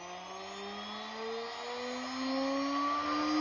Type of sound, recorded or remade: recorded